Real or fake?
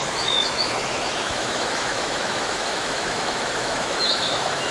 fake